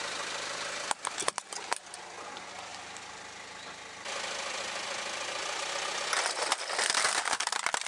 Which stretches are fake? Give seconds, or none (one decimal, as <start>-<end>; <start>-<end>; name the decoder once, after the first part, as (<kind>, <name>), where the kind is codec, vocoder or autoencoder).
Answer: none